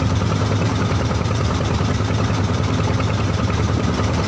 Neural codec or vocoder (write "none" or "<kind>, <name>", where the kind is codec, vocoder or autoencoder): vocoder, BigVGAN v2